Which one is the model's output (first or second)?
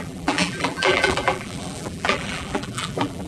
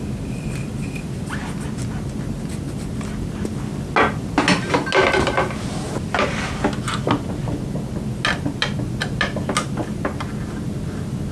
first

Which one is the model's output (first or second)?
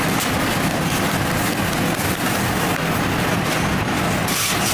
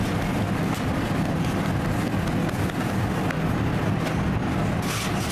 first